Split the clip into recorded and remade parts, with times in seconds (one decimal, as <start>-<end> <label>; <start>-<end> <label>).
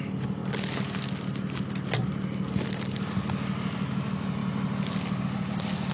0.0-5.9 recorded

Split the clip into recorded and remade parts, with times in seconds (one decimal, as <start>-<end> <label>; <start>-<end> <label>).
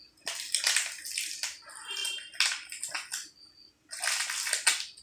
0.0-5.0 recorded